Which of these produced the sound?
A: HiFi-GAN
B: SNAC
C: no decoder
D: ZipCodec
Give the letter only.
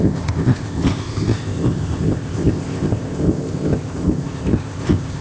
D